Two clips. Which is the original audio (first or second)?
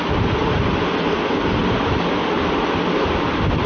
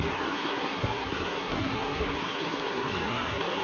first